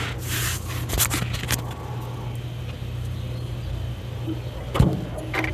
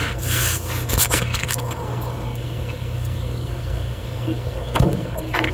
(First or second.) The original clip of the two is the first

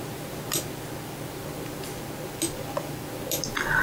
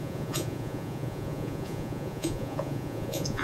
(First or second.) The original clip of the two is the first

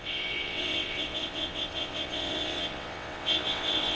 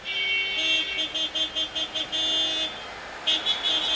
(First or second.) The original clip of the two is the second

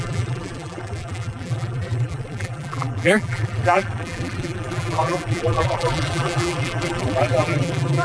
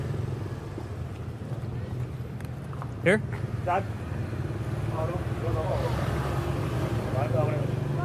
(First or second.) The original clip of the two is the second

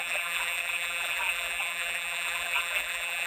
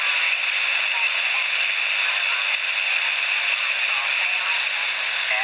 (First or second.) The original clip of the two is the second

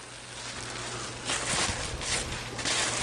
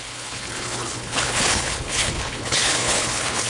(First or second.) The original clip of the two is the first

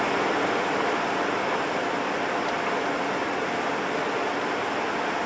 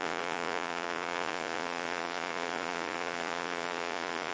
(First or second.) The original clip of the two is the first